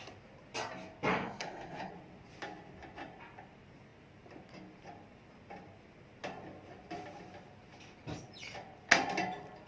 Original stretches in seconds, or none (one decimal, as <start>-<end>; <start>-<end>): 0.0-1.1; 1.9-9.7